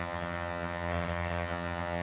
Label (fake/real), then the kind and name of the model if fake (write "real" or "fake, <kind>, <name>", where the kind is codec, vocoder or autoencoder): fake, vocoder, HiFi-GAN